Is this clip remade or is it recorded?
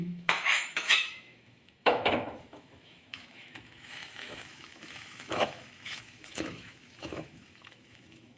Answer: remade